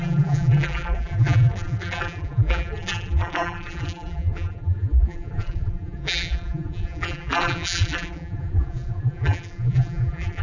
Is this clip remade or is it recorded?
remade